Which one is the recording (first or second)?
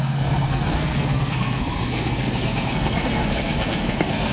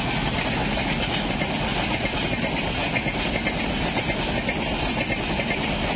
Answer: second